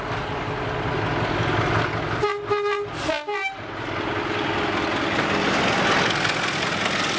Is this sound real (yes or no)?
yes